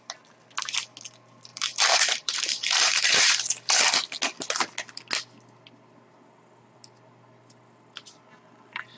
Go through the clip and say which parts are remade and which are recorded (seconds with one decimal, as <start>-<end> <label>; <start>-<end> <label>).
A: 0.0-1.5 recorded; 1.5-3.8 remade; 3.8-9.0 recorded